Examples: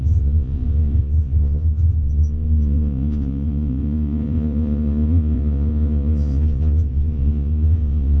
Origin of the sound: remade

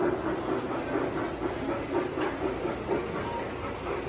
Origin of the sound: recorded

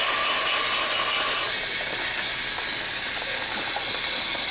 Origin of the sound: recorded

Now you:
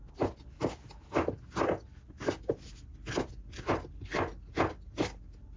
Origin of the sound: recorded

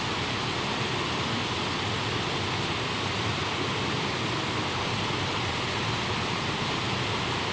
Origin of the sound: recorded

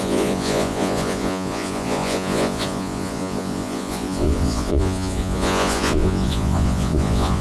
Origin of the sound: remade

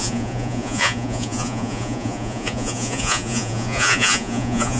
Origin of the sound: remade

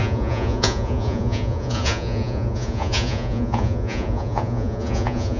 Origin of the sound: remade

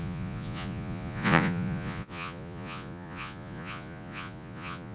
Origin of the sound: remade